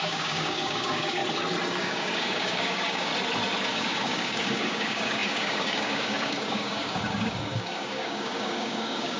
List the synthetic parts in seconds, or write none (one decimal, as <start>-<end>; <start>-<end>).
0.0-1.2; 1.7-3.1; 3.7-9.2